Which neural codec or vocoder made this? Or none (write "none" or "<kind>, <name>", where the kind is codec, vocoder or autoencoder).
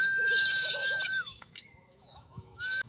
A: autoencoder, DAC-VAE